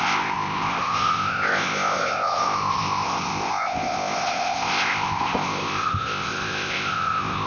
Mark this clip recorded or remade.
remade